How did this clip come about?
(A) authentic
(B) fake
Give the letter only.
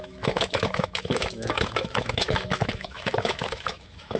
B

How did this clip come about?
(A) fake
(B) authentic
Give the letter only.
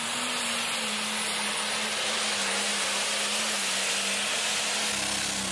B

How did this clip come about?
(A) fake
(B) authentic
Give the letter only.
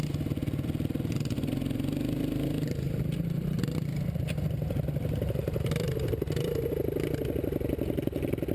B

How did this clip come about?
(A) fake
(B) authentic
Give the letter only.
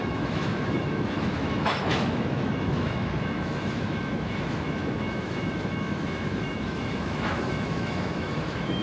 A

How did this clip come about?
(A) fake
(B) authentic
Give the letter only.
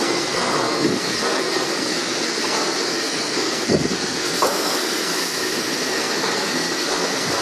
A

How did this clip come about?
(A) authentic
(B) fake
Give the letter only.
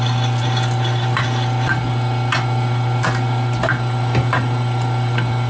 A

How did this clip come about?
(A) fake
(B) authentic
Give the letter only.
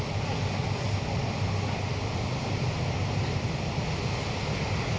B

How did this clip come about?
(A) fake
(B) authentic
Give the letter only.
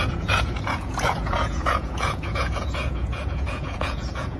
A